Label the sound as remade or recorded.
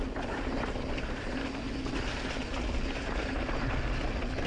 recorded